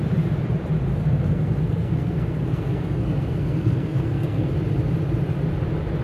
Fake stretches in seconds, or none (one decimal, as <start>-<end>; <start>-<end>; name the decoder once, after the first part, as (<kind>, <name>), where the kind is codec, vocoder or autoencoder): 0.9-4.5 (codec, SNAC)